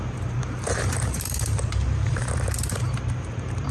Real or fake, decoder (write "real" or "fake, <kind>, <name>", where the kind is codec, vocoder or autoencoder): fake, vocoder, BigVGAN v2